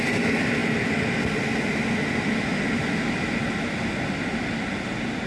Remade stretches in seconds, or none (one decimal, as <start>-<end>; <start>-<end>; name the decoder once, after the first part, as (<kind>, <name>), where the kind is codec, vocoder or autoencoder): none

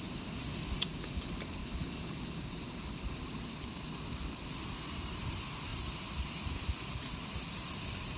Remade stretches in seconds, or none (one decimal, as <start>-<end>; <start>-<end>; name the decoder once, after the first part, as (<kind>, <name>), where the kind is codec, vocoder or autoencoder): none

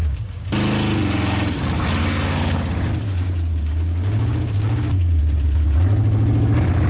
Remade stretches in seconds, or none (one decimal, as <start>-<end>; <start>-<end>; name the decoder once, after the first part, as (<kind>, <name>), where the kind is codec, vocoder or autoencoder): 0.0-0.5 (codec, DAC); 2.0-2.9; 3.5-5.2

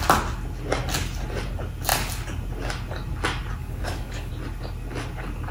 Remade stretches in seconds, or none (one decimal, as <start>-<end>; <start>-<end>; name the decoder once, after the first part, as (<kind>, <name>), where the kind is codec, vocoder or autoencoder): 3.6-4.3 (codec, DAC)

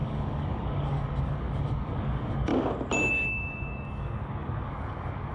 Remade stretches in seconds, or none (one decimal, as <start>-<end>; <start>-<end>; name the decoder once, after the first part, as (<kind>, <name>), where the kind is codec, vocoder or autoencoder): 0.0-2.5 (codec, DAC); 3.1-5.3

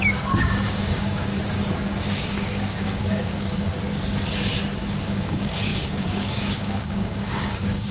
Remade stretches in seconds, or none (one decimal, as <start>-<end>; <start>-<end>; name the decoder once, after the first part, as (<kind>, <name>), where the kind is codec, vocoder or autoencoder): 0.0-1.3 (codec, DAC); 2.1-3.7; 5.0-7.9

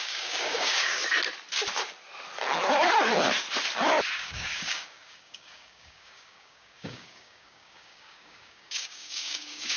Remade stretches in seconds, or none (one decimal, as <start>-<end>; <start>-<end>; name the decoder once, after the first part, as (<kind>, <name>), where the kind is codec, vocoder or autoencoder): 0.0-1.0 (codec, DAC); 4.1-9.8